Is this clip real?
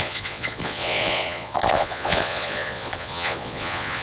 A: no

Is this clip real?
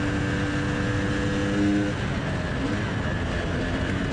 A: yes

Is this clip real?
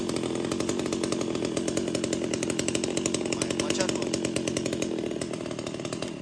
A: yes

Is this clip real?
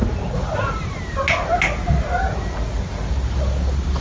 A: yes